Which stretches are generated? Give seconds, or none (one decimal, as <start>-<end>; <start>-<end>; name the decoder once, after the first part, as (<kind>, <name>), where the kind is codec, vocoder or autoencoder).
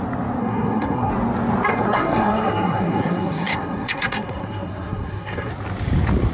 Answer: 0.4-1.1 (codec, SNAC); 1.7-5.5